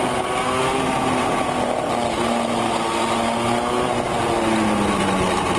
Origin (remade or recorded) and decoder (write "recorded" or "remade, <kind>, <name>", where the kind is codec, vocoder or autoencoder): recorded